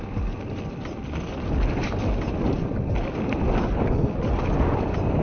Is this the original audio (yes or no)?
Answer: yes